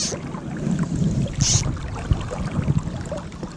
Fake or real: real